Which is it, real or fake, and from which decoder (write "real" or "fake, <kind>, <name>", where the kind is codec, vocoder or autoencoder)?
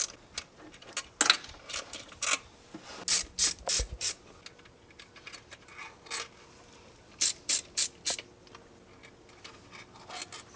real